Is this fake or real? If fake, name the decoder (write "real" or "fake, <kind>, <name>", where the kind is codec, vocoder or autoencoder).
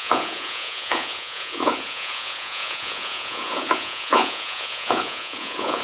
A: fake, vocoder, Vocos